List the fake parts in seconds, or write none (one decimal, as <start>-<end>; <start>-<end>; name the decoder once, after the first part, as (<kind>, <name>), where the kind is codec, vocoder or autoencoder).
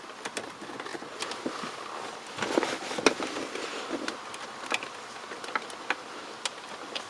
none